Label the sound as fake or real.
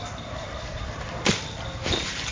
fake